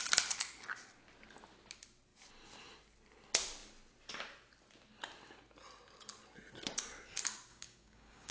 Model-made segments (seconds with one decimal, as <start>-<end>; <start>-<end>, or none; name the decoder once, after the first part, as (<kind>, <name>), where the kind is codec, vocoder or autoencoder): 7.5-8.3 (codec, DAC)